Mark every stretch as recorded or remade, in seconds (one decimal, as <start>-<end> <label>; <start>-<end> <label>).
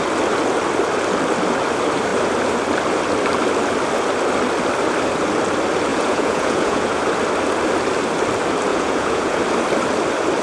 0.0-5.9 recorded; 5.9-7.0 remade; 7.0-8.7 recorded; 8.7-9.4 remade; 9.4-10.4 recorded